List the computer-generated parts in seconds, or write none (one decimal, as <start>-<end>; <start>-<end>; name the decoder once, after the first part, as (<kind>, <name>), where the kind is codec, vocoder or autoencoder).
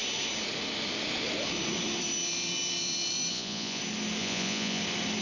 3.3-3.8 (vocoder, Vocos); 4.2-4.8